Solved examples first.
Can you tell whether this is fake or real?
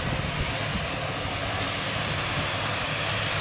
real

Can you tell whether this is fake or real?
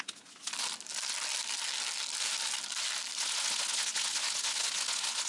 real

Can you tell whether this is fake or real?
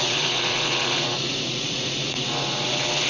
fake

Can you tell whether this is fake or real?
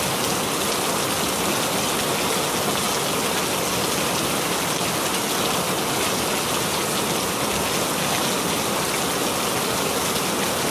real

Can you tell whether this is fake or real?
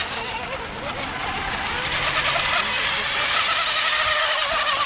real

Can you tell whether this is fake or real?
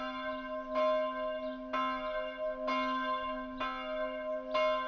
real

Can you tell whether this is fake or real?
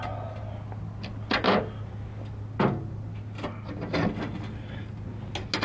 real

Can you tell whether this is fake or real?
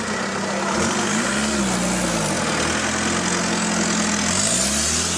real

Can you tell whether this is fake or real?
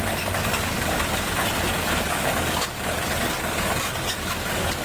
fake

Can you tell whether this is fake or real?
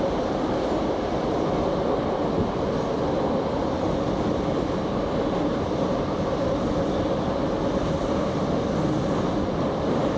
real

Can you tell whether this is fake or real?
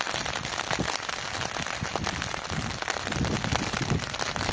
real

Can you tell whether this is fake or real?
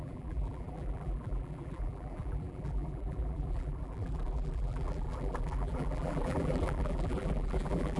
fake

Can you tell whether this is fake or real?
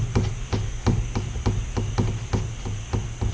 real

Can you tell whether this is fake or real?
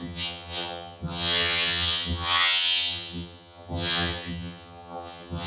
fake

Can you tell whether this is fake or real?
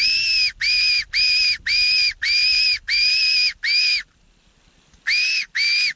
real